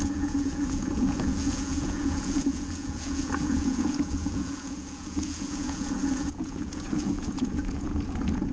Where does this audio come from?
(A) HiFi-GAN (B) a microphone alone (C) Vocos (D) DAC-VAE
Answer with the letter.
C